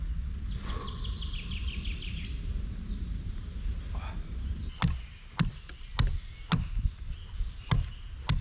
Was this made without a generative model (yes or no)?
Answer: yes